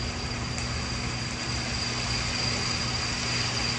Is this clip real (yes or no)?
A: yes